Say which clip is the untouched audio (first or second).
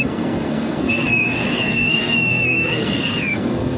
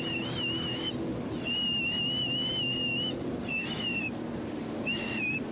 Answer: second